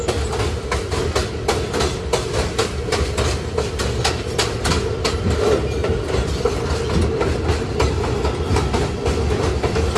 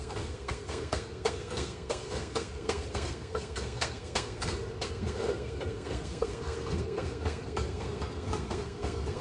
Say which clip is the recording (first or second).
first